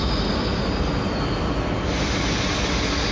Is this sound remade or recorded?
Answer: recorded